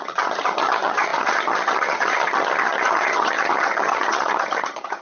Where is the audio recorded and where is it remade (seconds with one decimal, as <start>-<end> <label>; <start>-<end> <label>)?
0.0-5.0 remade

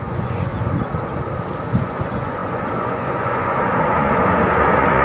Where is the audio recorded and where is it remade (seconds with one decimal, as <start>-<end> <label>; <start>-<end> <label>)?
0.0-0.5 remade; 0.5-1.7 recorded; 1.7-5.0 remade

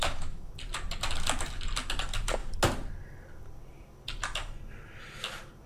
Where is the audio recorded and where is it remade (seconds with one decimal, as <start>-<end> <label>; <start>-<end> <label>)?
0.0-0.5 remade; 0.5-5.7 recorded

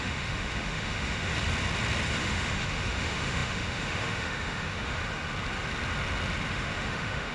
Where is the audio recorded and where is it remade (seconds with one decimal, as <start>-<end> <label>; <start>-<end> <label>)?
0.0-1.3 remade; 1.3-2.2 recorded; 2.2-5.0 remade; 5.0-6.5 recorded; 6.5-7.3 remade

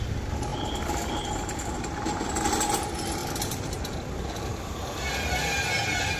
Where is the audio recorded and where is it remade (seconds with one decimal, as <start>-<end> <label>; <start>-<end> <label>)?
0.0-6.2 recorded

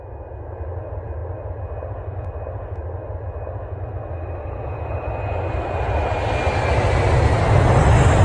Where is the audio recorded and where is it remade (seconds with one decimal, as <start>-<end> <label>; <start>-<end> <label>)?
0.0-8.2 recorded